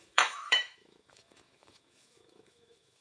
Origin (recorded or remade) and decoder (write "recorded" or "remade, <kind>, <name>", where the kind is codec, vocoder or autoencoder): remade, autoencoder, DAC-VAE